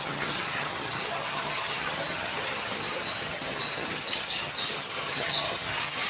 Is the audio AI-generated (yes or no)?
yes